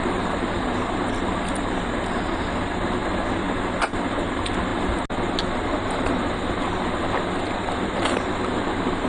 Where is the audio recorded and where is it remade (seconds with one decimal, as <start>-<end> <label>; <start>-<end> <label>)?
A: 0.0-9.1 recorded